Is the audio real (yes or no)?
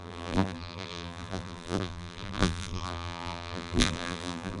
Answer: no